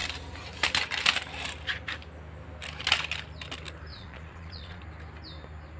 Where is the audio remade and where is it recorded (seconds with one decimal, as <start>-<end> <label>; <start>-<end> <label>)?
0.0-3.9 recorded; 3.9-4.8 remade; 4.8-5.8 recorded